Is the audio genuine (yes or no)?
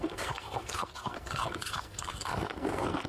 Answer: no